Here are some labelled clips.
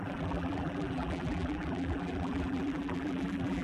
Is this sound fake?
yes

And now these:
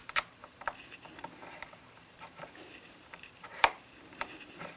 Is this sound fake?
yes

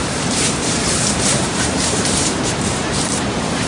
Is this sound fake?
yes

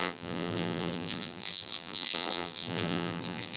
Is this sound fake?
yes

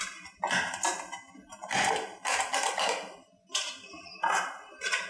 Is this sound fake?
no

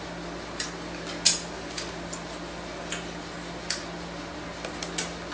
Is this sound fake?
no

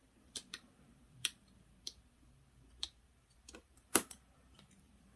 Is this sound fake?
yes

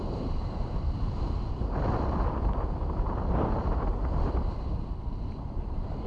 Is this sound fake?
yes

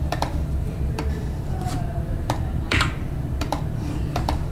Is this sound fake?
yes